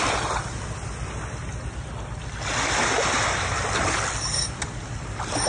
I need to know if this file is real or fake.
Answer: real